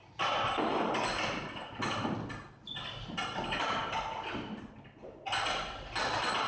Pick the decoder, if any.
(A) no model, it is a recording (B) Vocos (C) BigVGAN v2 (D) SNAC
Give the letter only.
A